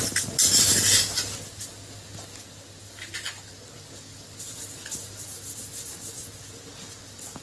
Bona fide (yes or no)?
yes